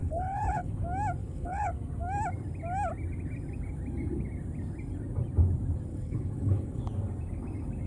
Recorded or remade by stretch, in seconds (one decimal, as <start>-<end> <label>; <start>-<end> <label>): 0.0-0.7 remade; 0.7-1.2 recorded; 1.2-1.7 remade; 1.7-5.9 recorded; 5.9-6.8 remade; 6.8-7.9 recorded